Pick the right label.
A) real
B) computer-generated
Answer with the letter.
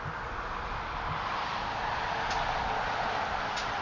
A